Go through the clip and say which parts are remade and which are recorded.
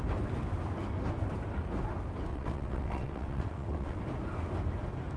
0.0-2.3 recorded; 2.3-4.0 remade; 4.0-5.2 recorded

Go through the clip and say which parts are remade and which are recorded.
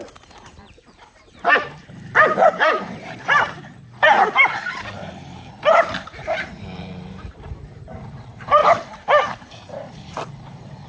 0.0-8.6 remade; 8.6-9.3 recorded; 9.3-10.9 remade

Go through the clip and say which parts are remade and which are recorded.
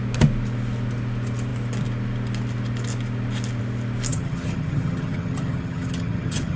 0.0-4.1 recorded; 4.1-6.6 remade